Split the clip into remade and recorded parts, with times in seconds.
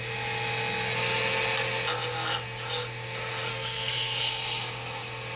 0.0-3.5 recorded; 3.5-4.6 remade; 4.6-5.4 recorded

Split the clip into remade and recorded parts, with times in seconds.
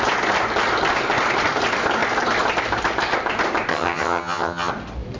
0.0-3.7 recorded; 3.7-4.7 remade; 4.7-5.2 recorded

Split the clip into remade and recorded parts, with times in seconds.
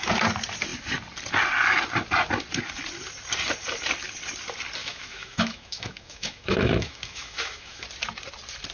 0.0-4.8 recorded; 4.8-7.8 remade; 7.8-8.7 recorded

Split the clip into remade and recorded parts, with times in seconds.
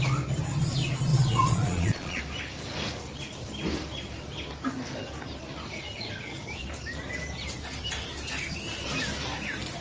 0.0-1.1 recorded; 1.1-2.2 remade; 2.2-9.8 recorded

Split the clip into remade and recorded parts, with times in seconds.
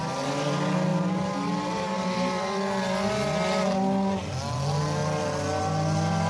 0.0-6.3 recorded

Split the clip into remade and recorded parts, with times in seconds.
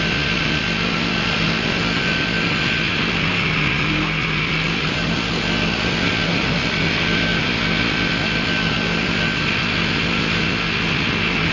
0.0-11.5 recorded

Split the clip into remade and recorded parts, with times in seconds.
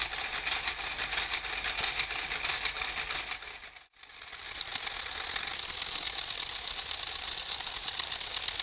0.0-8.6 recorded